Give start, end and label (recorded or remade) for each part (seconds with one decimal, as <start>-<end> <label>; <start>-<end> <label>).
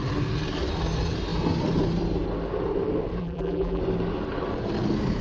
0.0-3.2 recorded; 3.2-3.8 remade; 3.8-5.2 recorded